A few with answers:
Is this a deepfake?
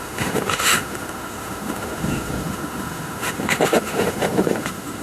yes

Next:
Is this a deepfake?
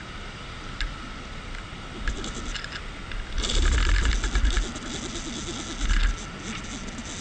no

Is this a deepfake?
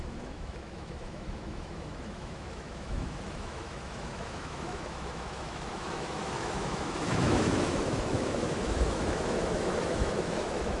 yes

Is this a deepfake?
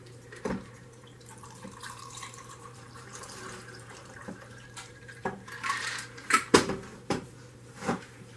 yes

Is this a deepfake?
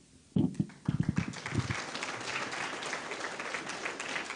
no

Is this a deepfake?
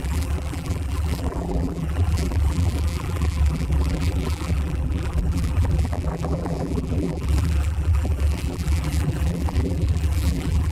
yes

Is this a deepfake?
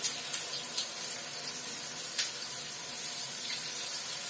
no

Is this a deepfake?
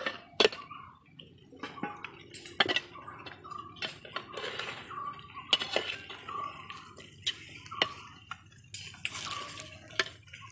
no